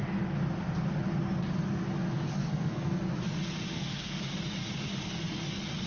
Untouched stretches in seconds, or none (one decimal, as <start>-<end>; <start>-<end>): 0.0-2.4; 3.0-3.7; 4.2-5.9